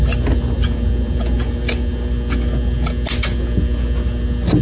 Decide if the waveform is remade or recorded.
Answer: recorded